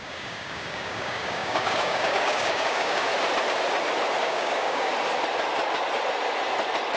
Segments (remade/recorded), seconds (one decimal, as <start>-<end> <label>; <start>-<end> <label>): 0.0-3.1 remade; 3.1-4.2 recorded; 4.2-4.9 remade; 4.9-7.0 recorded